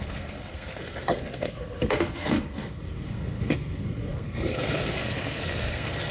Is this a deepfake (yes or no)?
yes